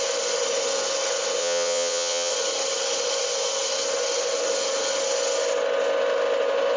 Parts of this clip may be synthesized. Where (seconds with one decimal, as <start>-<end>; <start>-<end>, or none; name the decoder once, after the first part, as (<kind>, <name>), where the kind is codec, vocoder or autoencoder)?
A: 1.4-2.3 (vocoder, WaveNeXt)